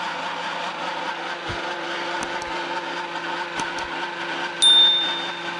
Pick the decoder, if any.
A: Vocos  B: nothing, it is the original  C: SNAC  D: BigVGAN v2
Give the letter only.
B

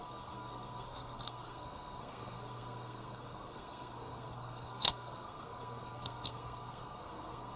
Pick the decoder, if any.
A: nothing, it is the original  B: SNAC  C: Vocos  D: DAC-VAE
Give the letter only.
B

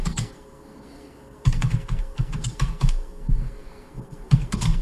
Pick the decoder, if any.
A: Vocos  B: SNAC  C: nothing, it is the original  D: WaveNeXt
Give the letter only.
B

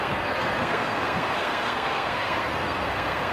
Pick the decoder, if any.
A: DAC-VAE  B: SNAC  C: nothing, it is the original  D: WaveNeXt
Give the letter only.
B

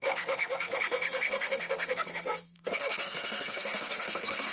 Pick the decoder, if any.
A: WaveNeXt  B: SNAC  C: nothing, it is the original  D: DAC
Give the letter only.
B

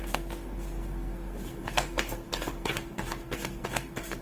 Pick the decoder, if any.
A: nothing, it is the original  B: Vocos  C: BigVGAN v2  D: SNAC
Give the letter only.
D